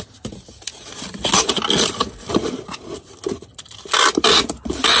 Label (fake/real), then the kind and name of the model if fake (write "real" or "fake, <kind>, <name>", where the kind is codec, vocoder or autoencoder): real